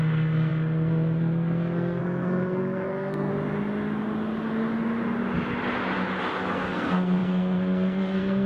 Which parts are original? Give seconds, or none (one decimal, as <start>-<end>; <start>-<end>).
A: 3.3-6.5